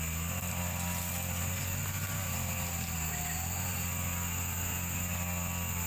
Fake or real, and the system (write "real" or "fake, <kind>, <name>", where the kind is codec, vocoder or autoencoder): real